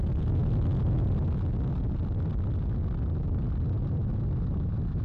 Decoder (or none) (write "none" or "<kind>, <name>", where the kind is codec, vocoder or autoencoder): none